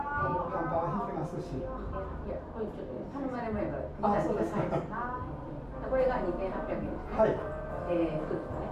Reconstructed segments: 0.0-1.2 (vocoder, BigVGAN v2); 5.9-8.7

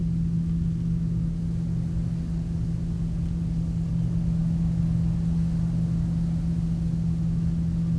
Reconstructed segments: none

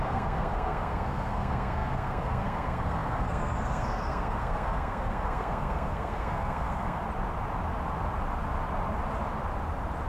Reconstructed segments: 0.0-7.0 (codec, SNAC)

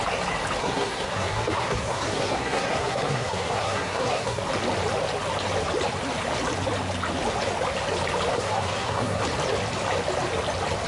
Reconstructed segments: 0.6-4.4 (codec, SNAC); 8.3-9.2

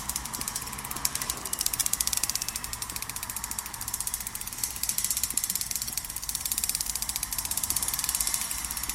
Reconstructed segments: none

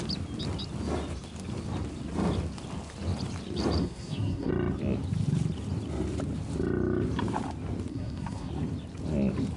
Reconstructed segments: 3.8-4.5 (codec, SNAC); 7.9-8.5